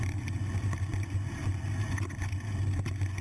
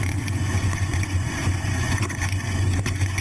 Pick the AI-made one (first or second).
second